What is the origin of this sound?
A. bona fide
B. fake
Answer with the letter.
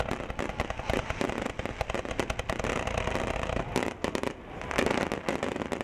A